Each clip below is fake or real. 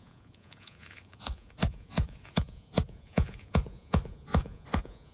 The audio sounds fake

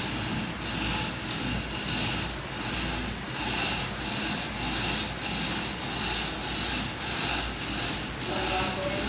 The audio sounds real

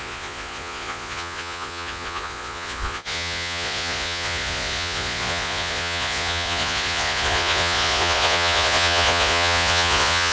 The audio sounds fake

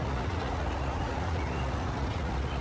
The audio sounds fake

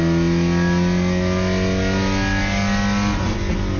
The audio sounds real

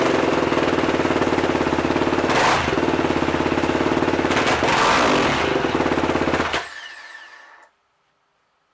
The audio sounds real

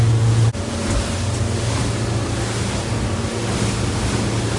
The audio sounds real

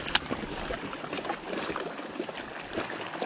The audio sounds real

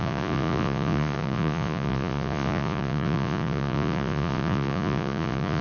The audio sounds fake